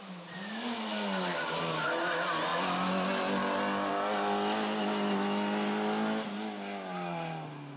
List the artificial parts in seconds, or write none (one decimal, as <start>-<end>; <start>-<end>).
none